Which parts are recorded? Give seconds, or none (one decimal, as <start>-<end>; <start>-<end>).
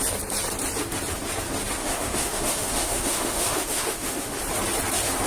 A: 0.0-1.8; 4.4-5.3